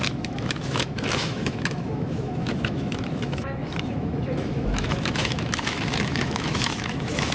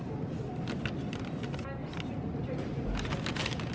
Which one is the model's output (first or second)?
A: first